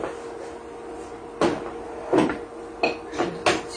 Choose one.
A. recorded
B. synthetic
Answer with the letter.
A